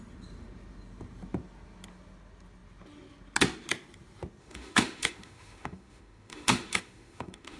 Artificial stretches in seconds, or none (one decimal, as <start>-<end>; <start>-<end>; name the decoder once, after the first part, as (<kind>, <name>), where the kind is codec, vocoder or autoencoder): 4.4-7.6 (autoencoder, DAC-VAE)